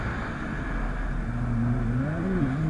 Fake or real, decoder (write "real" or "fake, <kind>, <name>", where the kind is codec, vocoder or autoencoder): real